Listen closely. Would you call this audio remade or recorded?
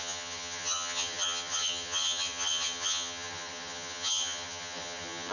remade